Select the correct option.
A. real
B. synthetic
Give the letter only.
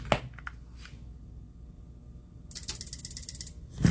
A